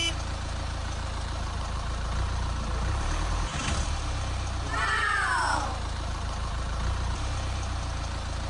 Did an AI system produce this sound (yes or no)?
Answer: yes